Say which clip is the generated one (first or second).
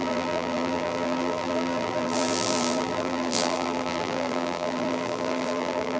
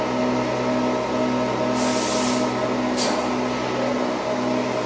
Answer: first